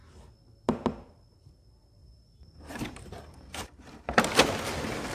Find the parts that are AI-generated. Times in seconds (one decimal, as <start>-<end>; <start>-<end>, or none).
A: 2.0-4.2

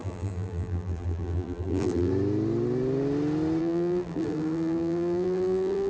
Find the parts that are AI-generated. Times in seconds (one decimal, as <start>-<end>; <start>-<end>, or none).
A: 0.0-2.1; 3.6-5.9

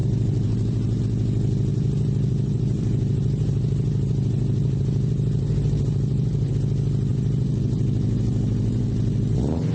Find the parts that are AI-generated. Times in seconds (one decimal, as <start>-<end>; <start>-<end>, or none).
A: 0.0-1.0; 1.7-6.5; 7.1-9.2